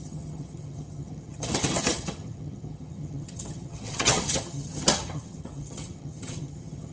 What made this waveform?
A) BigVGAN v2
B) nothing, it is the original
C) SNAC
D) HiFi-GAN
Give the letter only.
D